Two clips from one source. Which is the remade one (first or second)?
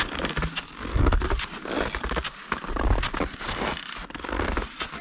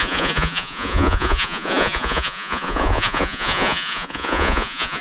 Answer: second